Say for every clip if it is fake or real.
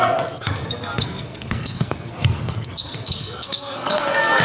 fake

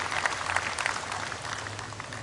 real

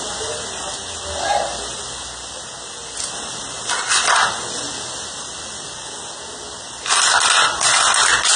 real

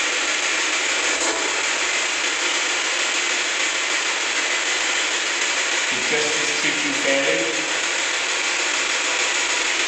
real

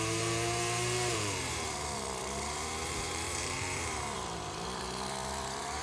fake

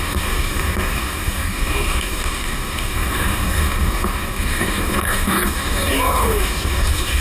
fake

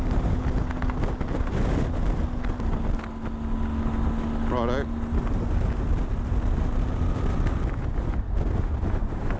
real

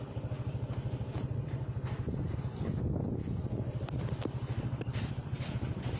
real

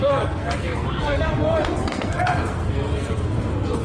fake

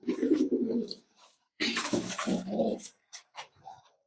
fake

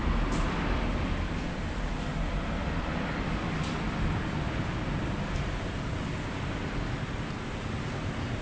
real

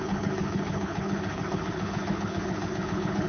fake